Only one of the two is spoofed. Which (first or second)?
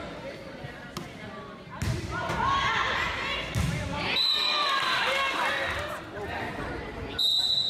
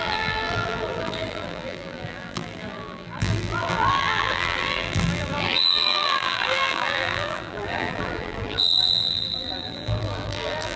second